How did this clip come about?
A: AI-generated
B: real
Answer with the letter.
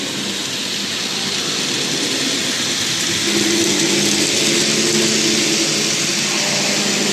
B